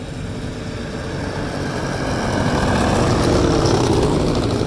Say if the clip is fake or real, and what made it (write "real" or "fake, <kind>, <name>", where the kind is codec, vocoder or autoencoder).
real